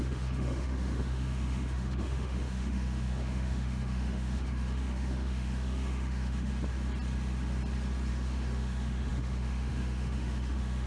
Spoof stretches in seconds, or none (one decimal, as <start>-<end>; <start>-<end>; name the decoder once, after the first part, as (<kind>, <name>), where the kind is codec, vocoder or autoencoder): 0.0-6.5 (autoencoder, DAC-VAE); 8.1-10.9